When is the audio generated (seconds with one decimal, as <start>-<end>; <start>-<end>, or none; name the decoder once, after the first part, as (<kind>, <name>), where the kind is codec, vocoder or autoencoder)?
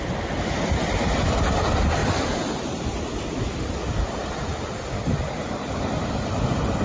none